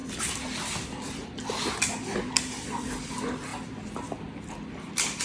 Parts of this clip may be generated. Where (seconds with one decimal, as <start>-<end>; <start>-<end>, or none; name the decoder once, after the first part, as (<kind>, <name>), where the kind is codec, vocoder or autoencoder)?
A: none

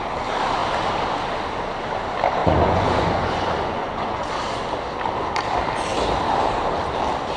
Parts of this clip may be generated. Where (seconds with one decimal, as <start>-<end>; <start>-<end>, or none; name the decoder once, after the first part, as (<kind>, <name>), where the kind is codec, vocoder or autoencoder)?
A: 2.4-4.3 (vocoder, Vocos)